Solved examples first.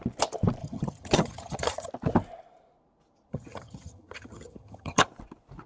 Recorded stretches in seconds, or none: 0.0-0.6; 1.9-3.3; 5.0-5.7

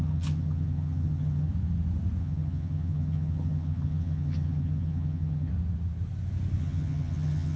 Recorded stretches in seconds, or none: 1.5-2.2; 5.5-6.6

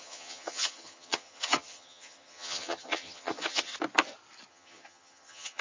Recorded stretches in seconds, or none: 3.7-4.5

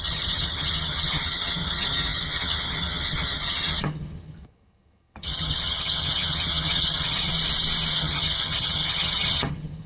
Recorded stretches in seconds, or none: 7.3-7.9